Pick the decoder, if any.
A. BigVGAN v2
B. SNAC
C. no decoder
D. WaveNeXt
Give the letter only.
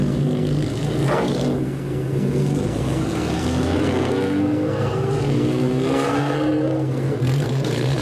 B